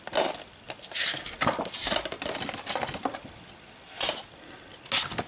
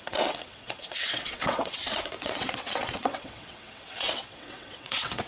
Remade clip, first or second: second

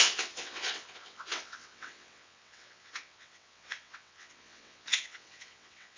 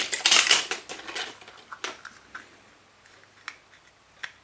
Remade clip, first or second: first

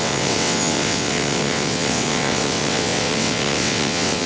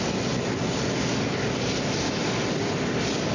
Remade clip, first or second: first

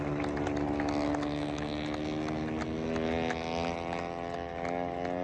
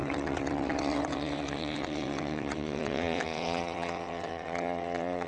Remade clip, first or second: second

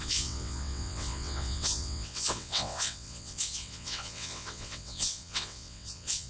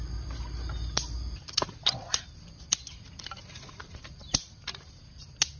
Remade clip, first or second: first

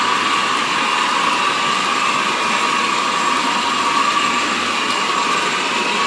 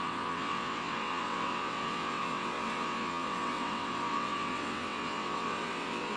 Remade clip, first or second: second